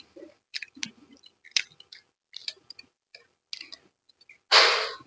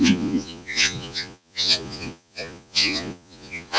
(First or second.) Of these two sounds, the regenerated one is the second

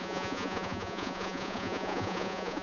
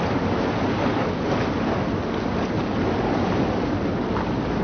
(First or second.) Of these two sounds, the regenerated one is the first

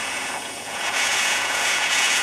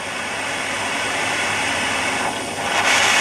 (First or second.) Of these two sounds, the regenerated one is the first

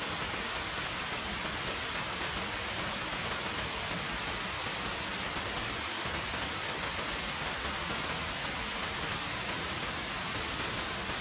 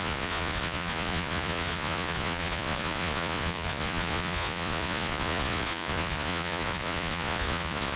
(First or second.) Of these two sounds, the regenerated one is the second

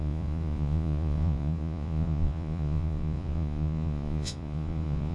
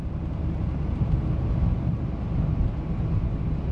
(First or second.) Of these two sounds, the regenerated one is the first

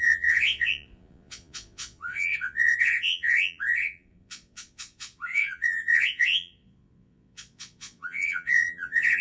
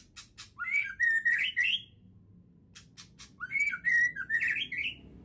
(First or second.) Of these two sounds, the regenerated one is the first